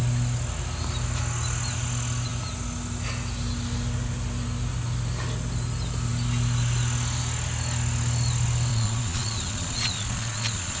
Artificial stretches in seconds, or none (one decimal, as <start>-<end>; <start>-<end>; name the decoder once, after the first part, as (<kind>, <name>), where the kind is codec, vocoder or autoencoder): 8.7-10.8 (vocoder, Vocos)